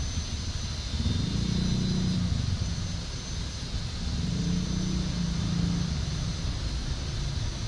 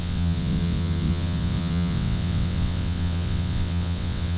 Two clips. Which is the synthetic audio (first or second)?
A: second